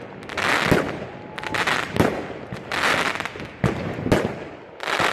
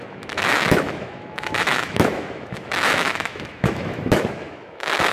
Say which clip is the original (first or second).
first